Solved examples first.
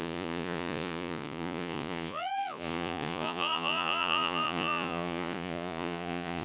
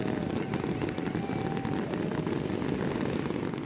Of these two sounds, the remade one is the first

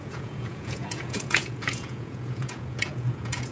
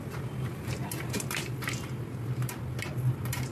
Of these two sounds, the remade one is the first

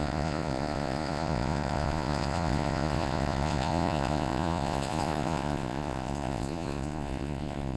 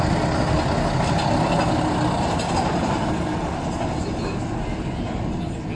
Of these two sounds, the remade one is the first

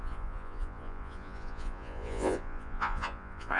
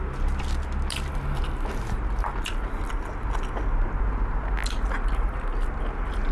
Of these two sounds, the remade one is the first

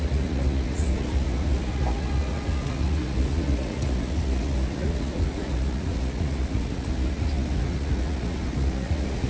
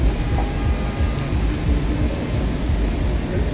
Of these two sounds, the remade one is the first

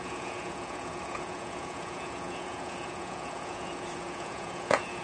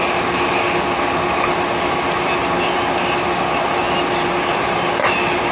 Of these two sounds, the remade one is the first